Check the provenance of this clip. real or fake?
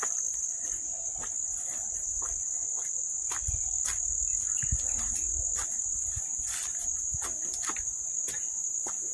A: real